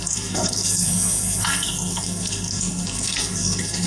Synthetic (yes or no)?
yes